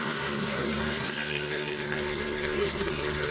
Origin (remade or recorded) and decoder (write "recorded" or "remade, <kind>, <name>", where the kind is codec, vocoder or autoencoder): remade, codec, SNAC